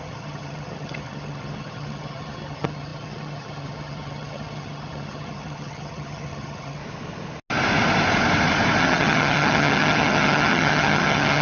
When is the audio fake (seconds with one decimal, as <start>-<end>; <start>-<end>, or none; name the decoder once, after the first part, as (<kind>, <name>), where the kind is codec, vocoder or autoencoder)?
0.0-6.8 (vocoder, HiFi-GAN); 8.8-11.4